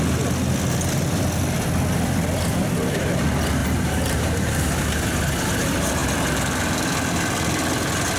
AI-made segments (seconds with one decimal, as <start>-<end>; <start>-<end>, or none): 3.6-4.7